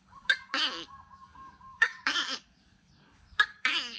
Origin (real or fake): fake